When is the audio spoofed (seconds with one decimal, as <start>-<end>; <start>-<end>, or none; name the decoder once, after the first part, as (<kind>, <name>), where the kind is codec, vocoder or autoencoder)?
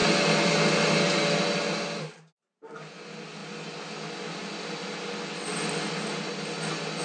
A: none